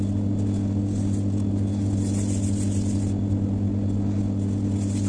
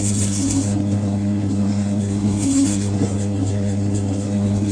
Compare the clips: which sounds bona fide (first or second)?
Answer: first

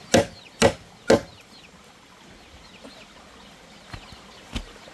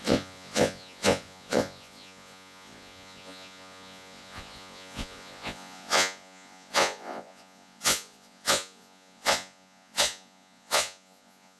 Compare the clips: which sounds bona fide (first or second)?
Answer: first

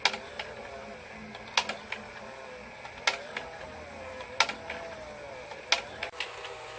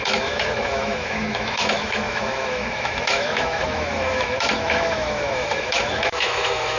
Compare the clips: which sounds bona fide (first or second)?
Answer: first